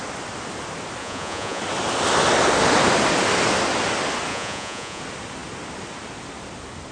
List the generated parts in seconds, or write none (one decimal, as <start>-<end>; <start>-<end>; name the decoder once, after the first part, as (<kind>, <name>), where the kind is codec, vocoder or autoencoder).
1.0-1.6 (vocoder, Vocos); 4.3-5.0